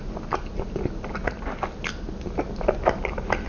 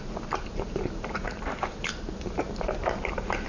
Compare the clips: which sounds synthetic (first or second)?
second